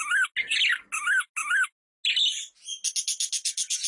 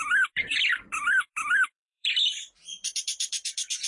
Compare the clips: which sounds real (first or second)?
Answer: first